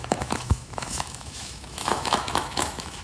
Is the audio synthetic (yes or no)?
yes